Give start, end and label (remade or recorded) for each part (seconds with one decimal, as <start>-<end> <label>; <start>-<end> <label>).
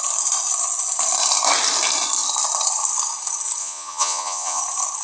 0.0-3.6 recorded; 3.6-4.6 remade; 4.6-5.0 recorded